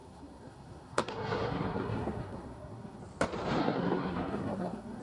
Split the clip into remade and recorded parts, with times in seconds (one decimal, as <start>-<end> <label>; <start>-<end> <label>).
0.0-3.0 remade; 3.0-3.6 recorded; 3.6-5.0 remade